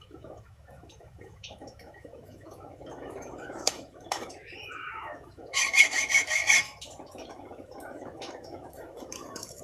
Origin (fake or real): fake